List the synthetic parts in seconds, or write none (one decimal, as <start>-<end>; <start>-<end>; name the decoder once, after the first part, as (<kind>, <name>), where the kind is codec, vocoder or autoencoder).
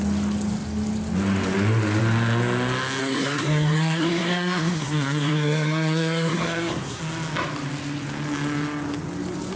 3.0-7.0 (codec, SNAC)